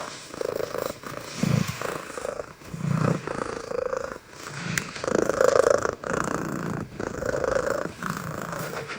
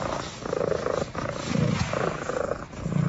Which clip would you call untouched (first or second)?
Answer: second